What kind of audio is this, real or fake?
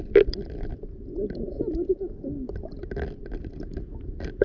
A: real